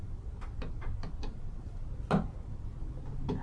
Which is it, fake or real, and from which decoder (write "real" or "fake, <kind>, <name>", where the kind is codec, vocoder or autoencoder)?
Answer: real